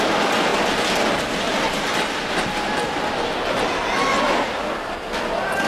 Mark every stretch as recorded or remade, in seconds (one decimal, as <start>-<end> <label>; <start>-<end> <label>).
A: 0.0-5.7 recorded